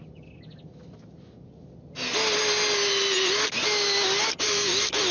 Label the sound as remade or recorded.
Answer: recorded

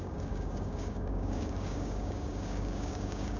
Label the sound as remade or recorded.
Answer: remade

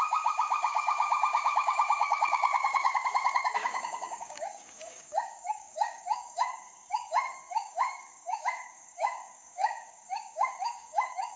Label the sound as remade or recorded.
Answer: remade